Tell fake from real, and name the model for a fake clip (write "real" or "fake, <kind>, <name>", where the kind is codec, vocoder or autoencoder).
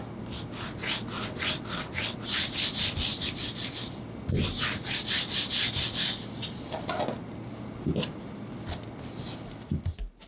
real